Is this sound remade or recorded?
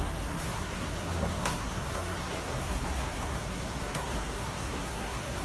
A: remade